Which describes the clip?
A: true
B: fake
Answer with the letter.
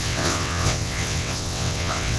B